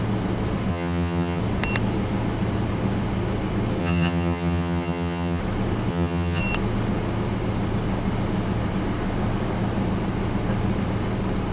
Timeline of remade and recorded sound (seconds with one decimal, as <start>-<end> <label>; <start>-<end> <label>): 0.0-0.7 recorded; 0.7-1.4 remade; 1.4-3.8 recorded; 3.8-5.4 remade; 5.4-5.9 recorded; 5.9-6.4 remade; 6.4-11.5 recorded